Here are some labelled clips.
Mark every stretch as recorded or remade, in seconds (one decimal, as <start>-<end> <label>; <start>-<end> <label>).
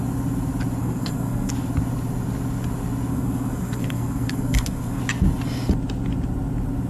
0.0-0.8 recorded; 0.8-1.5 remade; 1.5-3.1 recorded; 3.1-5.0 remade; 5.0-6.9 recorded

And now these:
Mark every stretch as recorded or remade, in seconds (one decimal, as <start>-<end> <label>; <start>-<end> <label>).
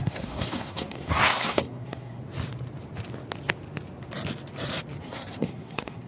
0.0-2.2 remade; 2.2-5.0 recorded; 5.0-6.1 remade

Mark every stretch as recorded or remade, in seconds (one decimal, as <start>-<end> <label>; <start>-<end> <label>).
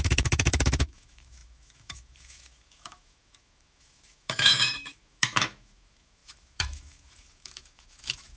0.0-8.4 remade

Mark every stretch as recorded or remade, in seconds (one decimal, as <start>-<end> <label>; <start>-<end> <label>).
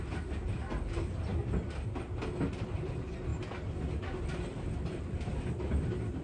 0.0-6.2 recorded